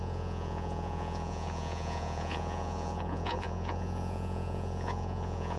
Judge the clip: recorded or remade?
remade